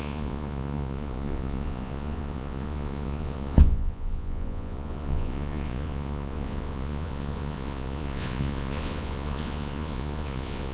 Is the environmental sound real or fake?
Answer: fake